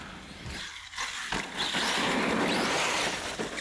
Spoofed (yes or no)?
no